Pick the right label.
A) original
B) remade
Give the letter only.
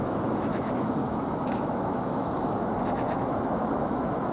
B